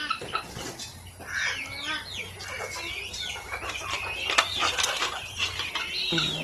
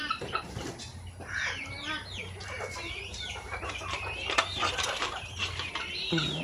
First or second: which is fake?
second